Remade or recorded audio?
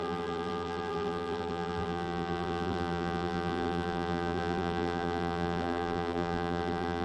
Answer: remade